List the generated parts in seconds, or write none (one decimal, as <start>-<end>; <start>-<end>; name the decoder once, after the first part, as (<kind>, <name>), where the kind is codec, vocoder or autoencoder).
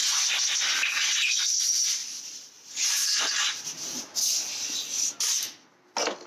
2.0-4.2 (vocoder, BigVGAN v2)